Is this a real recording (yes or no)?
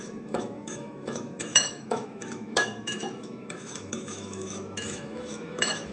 no